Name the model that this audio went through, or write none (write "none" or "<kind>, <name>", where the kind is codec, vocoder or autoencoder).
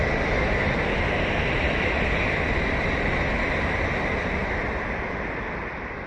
none